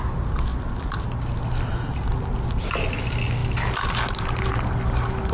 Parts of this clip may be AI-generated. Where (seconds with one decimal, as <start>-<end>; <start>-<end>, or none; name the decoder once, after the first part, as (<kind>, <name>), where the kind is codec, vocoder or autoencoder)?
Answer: none